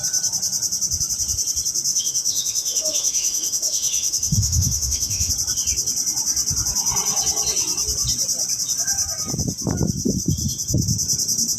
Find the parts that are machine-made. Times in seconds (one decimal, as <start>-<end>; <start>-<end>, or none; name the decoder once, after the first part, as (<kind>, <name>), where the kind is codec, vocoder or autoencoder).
1.9-5.3 (autoencoder, DAC-VAE)